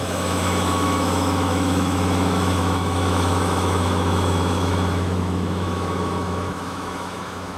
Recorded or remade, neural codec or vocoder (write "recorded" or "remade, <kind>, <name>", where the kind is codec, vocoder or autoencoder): remade, autoencoder, DAC-VAE